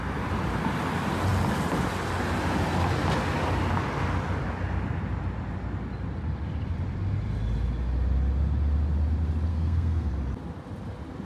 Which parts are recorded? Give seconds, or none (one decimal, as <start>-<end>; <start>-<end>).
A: 0.0-9.5; 10.1-11.2